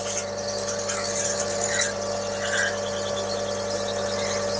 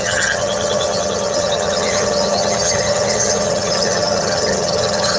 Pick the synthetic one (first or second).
second